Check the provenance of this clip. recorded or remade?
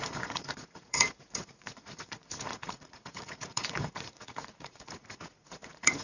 remade